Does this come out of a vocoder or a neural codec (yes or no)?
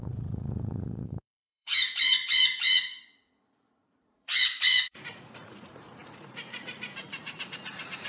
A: yes